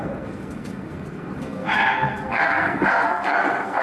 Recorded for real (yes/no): no